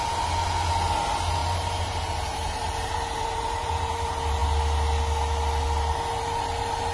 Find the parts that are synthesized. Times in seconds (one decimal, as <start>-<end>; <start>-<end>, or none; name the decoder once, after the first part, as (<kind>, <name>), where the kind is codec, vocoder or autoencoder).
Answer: 1.4-3.9 (vocoder, BigVGAN v2)